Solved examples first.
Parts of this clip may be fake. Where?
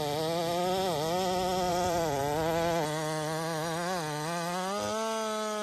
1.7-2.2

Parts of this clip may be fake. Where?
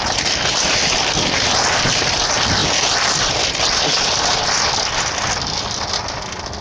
none